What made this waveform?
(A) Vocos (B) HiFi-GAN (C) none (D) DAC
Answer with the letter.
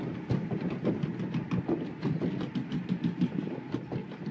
C